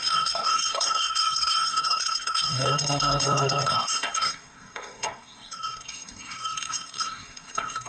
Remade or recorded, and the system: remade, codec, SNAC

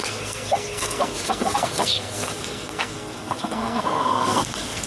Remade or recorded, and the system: remade, codec, SNAC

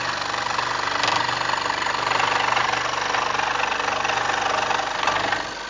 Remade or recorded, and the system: recorded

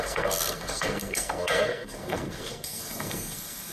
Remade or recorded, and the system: remade, codec, SNAC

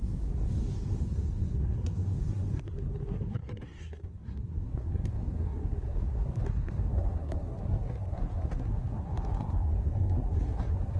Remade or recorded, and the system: remade, codec, SNAC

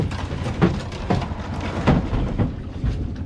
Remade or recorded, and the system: recorded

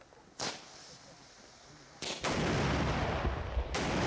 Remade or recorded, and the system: recorded